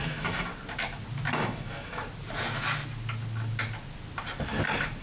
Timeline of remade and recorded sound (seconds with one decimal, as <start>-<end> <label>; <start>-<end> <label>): 0.0-0.5 remade; 0.5-1.3 recorded; 1.3-2.0 remade; 2.0-5.0 recorded